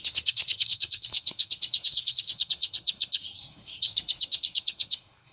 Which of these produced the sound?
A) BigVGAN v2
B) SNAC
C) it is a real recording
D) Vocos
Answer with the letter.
B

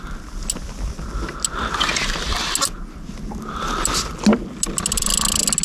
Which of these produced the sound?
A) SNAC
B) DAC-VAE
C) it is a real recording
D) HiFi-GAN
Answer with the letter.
C